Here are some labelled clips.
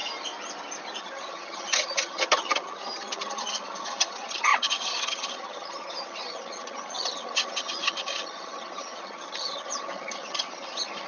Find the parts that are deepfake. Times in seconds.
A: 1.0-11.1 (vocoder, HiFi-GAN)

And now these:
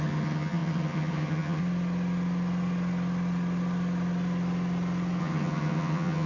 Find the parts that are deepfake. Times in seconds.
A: 0.0-1.6 (vocoder, HiFi-GAN); 5.2-6.3

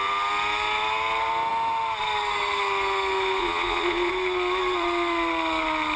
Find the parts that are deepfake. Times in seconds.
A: 3.4-4.1 (vocoder, Vocos)